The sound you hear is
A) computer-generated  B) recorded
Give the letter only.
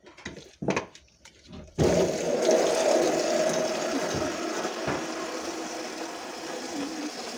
B